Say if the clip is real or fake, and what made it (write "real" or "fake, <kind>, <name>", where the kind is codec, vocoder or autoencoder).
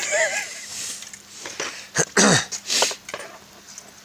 real